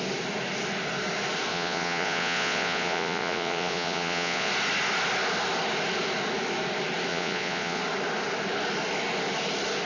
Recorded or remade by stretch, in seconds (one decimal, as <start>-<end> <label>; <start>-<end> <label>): 0.0-1.5 recorded; 1.5-4.5 remade; 4.5-7.1 recorded; 7.1-7.8 remade; 7.8-9.9 recorded